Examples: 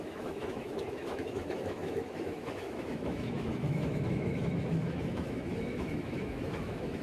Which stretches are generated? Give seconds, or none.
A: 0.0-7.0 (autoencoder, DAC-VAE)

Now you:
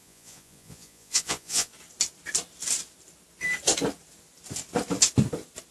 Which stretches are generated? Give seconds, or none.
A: 0.0-1.7 (vocoder, Vocos)